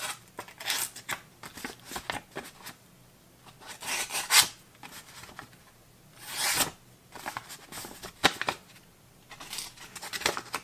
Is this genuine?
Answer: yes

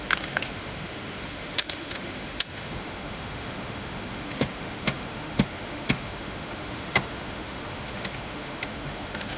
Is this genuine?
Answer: no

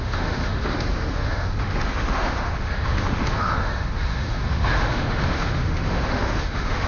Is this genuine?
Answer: no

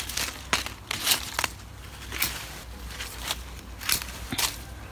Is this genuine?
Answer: yes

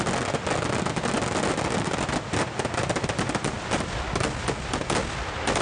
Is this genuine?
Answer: yes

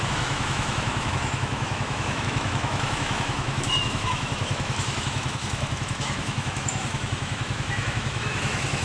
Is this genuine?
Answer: no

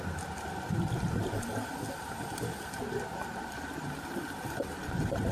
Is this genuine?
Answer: yes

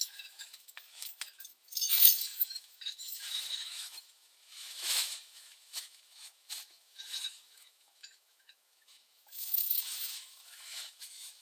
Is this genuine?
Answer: no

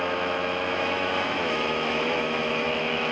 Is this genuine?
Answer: no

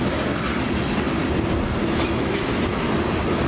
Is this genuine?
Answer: yes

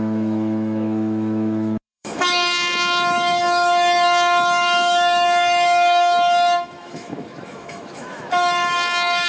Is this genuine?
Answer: no